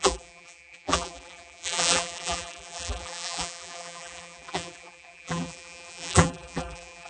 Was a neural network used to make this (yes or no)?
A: yes